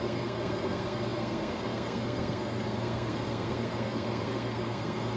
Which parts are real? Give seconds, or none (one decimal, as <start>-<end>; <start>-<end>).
none